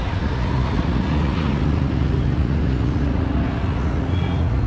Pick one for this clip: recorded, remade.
remade